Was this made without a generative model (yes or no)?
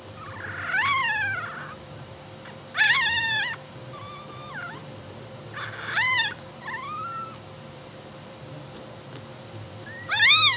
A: no